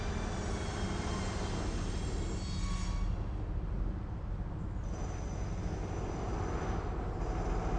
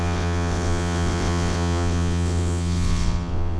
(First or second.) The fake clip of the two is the second